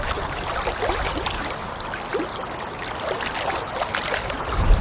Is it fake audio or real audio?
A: real